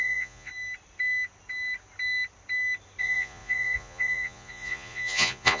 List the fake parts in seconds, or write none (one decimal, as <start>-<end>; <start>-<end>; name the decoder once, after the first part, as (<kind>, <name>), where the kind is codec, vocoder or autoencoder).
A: 0.0-0.5 (vocoder, Vocos); 3.0-5.6